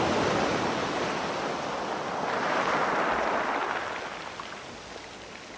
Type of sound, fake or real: real